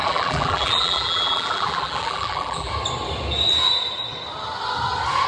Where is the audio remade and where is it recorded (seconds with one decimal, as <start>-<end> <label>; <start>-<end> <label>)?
0.0-2.7 remade; 2.7-5.3 recorded